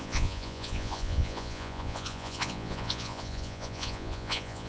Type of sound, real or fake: fake